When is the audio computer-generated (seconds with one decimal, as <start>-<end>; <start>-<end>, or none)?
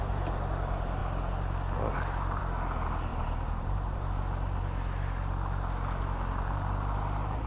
3.1-4.2